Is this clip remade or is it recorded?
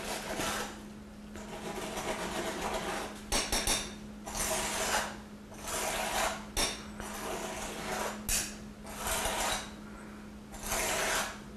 recorded